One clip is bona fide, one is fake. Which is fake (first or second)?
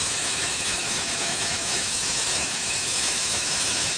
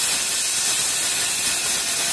first